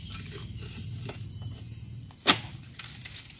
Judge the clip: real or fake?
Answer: real